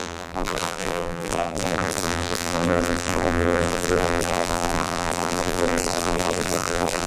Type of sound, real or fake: fake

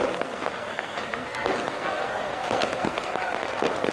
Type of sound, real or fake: fake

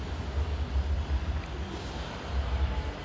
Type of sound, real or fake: real